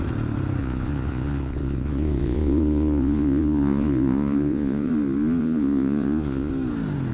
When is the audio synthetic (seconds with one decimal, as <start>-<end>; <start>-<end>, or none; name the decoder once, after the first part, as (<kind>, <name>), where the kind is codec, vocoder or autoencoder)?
0.6-4.9 (vocoder, Vocos); 5.4-6.5